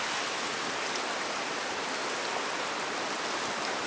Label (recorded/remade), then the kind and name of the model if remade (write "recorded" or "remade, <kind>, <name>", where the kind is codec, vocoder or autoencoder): recorded